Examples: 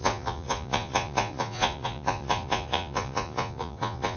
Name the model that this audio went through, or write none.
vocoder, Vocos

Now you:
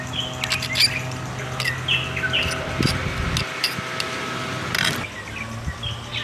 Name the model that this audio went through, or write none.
none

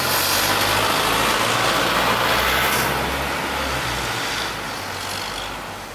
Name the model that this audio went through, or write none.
none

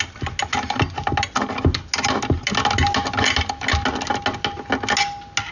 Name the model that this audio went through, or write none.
none